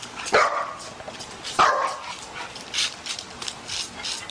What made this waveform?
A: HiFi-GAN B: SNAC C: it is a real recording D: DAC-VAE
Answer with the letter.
C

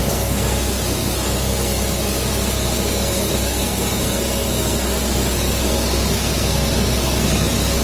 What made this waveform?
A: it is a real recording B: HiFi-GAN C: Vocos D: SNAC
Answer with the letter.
D